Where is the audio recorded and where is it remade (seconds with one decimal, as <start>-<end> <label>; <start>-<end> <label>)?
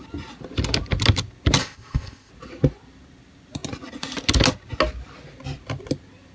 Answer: 0.0-1.6 recorded; 1.6-2.3 remade; 2.3-6.3 recorded